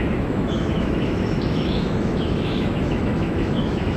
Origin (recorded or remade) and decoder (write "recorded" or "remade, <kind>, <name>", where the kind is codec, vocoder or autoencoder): remade, autoencoder, DAC-VAE